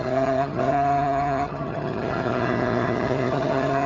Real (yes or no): no